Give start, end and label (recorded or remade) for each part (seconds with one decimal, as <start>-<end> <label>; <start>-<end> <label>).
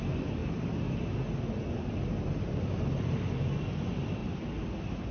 0.0-5.1 recorded